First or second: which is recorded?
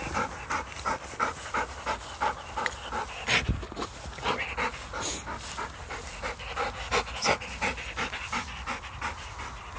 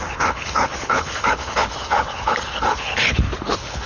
first